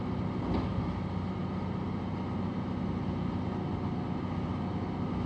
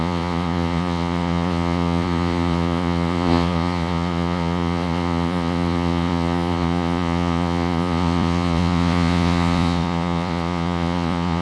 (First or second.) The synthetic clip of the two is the second